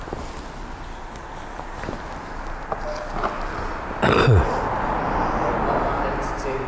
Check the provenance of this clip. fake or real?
real